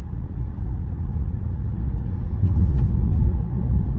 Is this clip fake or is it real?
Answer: fake